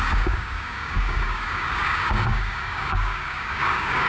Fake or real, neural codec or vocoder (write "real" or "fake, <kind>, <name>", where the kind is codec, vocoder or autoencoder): fake, codec, DAC